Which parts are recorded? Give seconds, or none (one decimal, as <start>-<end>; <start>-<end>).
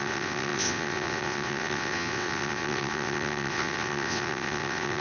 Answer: none